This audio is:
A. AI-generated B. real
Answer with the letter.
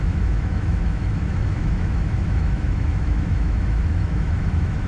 A